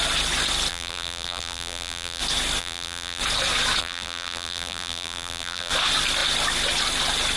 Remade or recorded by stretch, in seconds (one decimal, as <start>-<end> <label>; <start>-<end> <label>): 0.0-0.7 recorded; 0.7-2.2 remade; 2.2-2.6 recorded; 2.6-3.2 remade; 3.2-3.8 recorded; 3.8-5.7 remade; 5.7-7.4 recorded